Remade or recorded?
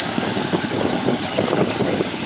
remade